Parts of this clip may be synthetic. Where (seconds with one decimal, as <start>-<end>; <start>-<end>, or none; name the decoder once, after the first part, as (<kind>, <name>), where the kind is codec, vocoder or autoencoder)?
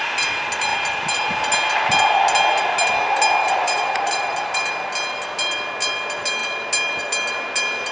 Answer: 3.4-4.7 (vocoder, BigVGAN v2)